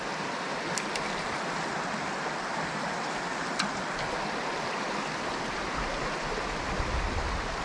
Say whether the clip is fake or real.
real